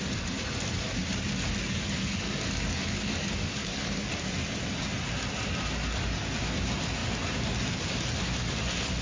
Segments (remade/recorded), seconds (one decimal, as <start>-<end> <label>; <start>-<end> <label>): 0.0-2.0 recorded; 2.0-4.1 remade; 4.1-9.0 recorded